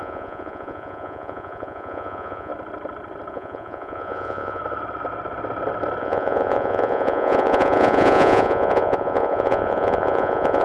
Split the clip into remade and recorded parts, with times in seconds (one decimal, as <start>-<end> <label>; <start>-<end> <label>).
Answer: 0.0-2.5 remade; 2.5-3.3 recorded; 3.3-4.6 remade; 4.6-6.0 recorded; 6.0-10.6 remade